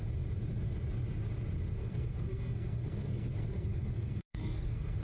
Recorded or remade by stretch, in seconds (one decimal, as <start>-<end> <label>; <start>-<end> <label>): 0.0-1.8 recorded; 1.8-5.0 remade